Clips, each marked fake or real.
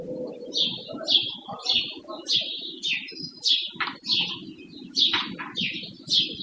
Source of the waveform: real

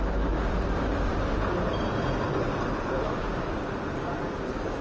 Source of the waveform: real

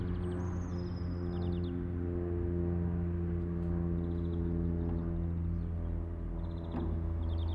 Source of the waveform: real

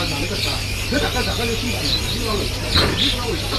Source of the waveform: real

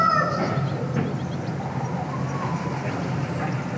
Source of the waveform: real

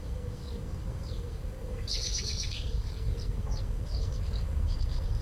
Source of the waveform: fake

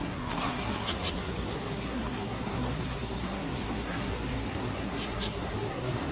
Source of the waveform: fake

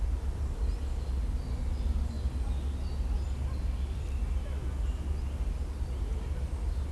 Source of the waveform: real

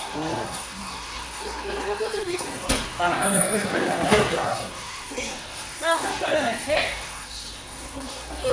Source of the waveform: fake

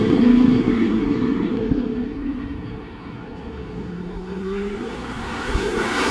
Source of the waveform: fake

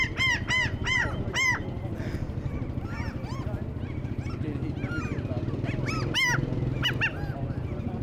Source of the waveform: real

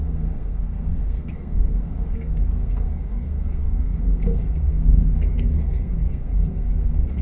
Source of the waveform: fake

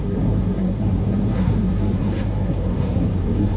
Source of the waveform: fake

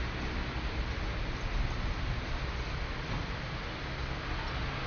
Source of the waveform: real